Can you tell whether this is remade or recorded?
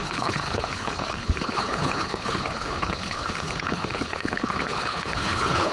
remade